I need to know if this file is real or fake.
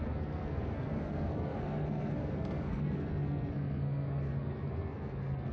fake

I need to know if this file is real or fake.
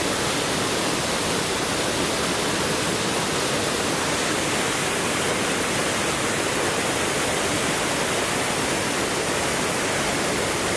real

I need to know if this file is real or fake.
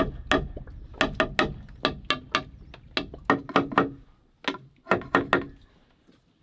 real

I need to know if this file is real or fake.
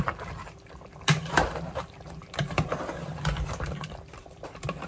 fake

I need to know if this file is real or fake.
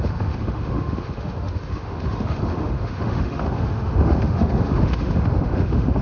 fake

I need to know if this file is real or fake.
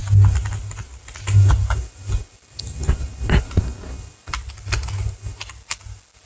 real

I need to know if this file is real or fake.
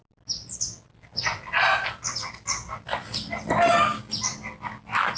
real